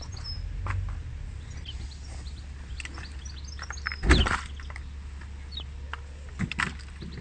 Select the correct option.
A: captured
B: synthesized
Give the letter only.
A